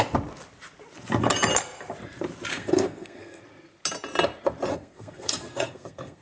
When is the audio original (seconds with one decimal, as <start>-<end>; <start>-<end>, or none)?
0.0-2.5; 3.4-4.7